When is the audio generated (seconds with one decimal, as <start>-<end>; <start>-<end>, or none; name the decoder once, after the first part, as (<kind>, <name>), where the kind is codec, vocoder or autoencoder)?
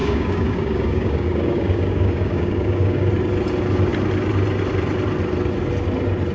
0.0-3.1 (codec, DAC)